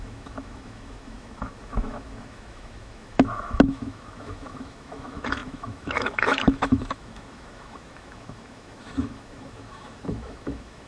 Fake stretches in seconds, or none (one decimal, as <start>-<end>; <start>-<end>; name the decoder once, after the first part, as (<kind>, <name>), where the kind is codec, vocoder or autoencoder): 0.0-10.9 (autoencoder, DAC-VAE)